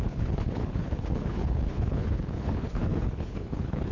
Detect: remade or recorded remade